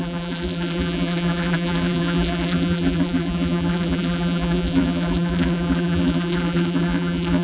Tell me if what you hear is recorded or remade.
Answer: remade